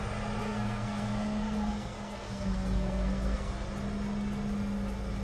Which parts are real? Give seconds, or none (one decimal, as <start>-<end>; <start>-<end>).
0.0-0.4; 3.5-5.2